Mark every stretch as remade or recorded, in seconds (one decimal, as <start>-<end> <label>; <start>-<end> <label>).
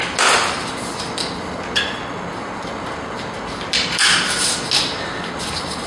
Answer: 0.0-5.9 recorded